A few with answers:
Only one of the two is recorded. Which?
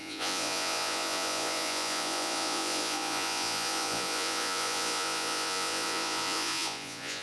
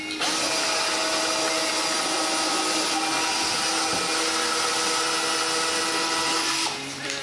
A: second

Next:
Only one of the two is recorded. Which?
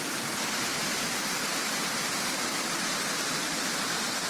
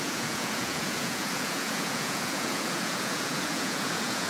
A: first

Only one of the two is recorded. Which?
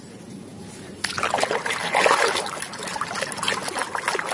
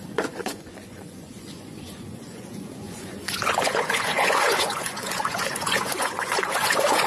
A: first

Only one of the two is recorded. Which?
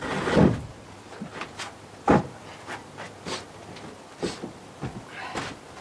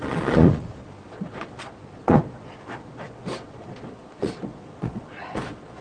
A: first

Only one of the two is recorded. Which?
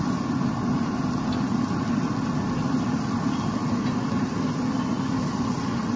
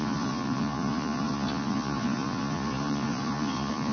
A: first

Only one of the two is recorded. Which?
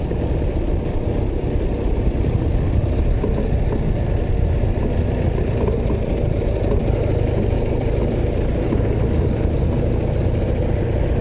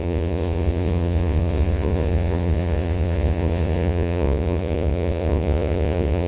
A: first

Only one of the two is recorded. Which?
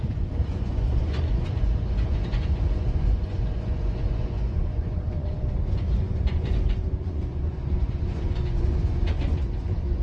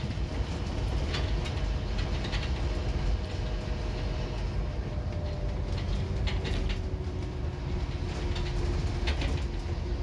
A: second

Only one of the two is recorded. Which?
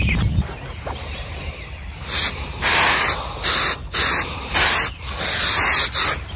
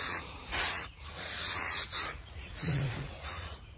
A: first